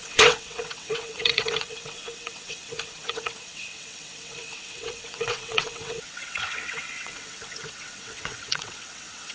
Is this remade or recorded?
remade